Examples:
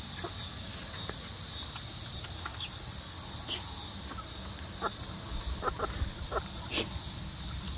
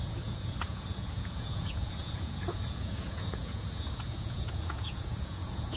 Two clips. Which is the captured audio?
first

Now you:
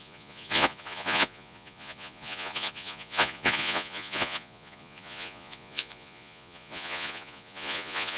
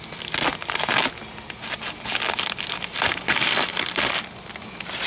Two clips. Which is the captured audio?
second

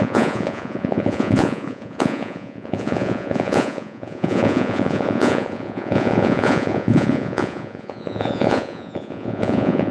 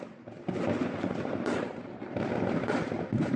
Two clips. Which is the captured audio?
second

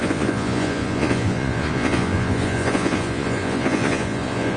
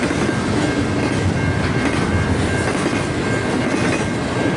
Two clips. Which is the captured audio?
second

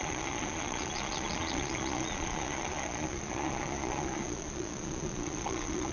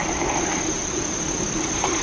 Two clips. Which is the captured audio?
second